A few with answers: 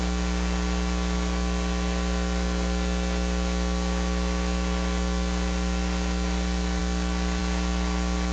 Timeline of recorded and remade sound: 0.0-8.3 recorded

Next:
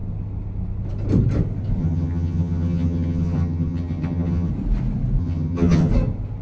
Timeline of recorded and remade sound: 0.0-1.8 recorded; 1.8-4.5 remade; 4.5-5.2 recorded; 5.2-5.9 remade; 5.9-6.4 recorded

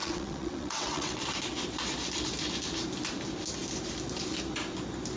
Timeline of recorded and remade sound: 0.0-1.2 remade; 1.2-5.2 recorded

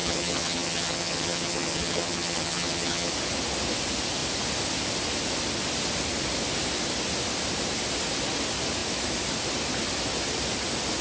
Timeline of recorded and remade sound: 0.0-3.1 remade; 3.1-11.0 recorded

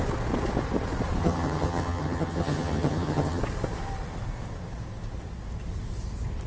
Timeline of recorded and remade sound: 0.0-1.2 recorded; 1.2-3.4 remade; 3.4-6.5 recorded

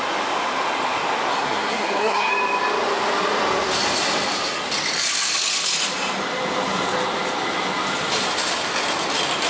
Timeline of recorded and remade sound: 0.0-1.3 recorded; 1.3-2.3 remade; 2.3-9.5 recorded